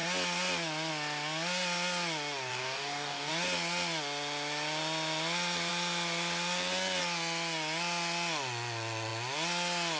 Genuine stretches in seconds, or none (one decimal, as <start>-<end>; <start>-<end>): 0.0-2.5; 3.3-10.0